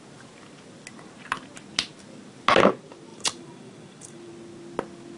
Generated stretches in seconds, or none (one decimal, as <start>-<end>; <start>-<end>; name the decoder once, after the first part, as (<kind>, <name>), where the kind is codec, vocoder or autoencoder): 3.1-4.3 (vocoder, BigVGAN v2)